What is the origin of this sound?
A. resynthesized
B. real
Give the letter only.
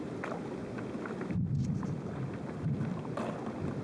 B